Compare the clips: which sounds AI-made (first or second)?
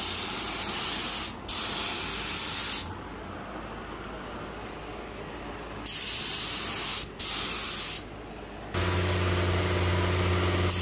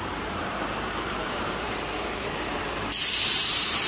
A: second